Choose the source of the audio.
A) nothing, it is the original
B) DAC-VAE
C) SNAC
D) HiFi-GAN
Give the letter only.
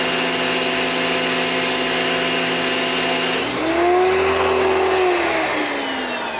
A